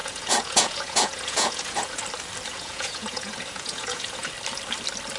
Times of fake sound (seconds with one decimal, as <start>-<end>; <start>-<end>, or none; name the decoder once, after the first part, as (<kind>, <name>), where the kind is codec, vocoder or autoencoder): 0.0-2.0 (vocoder, Vocos); 2.5-4.3